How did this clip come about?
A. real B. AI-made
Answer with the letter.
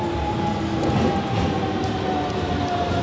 A